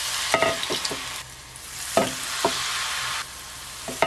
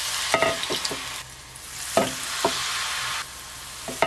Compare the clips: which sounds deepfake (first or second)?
first